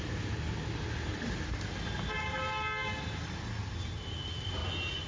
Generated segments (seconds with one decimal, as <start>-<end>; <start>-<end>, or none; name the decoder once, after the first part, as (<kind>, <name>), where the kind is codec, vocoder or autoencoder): none